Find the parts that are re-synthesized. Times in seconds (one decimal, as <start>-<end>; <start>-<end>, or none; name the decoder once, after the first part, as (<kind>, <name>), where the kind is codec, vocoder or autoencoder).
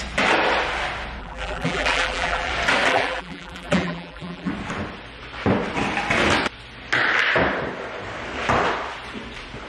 1.2-2.5 (vocoder, BigVGAN v2); 2.9-4.5